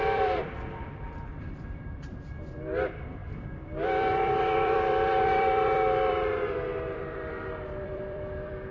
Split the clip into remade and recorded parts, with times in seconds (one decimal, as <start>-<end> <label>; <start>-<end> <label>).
0.0-8.7 remade